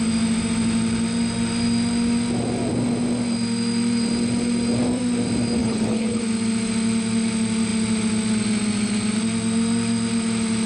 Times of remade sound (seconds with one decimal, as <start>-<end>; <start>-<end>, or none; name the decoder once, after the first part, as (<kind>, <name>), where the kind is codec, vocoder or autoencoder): 5.6-6.2 (codec, HILCodec)